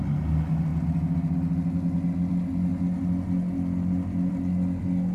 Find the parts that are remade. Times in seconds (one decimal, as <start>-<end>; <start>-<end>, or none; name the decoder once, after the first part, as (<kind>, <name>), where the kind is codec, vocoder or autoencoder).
none